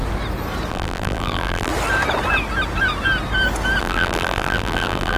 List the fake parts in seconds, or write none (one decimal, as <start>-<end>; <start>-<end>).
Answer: 0.7-1.7; 3.8-5.2